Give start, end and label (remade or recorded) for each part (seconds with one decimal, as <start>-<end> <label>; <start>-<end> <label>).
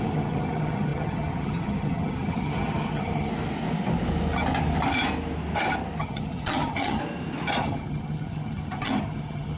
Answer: 0.0-3.3 remade; 3.3-6.0 recorded; 6.0-7.0 remade; 7.0-7.6 recorded; 7.6-9.6 remade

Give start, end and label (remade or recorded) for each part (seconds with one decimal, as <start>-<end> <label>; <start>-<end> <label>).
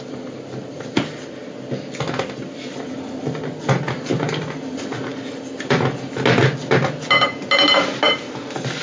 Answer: 0.0-8.8 recorded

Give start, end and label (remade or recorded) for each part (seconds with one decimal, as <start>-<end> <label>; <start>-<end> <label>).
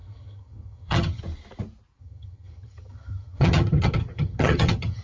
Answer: 0.0-1.2 remade; 1.2-2.0 recorded; 2.0-5.0 remade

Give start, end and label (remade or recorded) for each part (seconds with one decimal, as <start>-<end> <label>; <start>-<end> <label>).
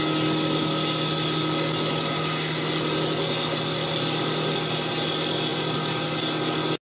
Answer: 0.0-6.8 recorded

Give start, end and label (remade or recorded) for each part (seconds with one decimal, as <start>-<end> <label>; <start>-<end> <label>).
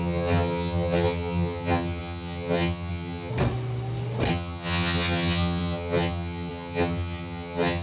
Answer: 0.0-3.3 remade; 3.3-4.3 recorded; 4.3-7.8 remade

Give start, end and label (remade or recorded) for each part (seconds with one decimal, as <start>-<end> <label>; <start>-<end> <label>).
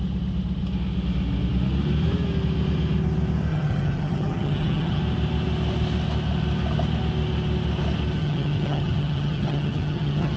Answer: 0.0-3.5 recorded; 3.5-5.0 remade; 5.0-8.2 recorded; 8.2-10.4 remade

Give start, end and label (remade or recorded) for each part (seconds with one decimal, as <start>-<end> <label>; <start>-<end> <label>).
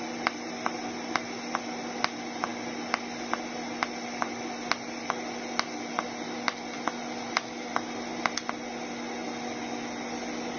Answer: 0.0-10.6 recorded